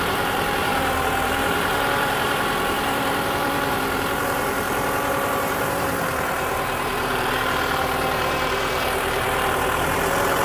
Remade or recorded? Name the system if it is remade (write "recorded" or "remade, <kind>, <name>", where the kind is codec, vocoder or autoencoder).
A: remade, vocoder, BigVGAN v2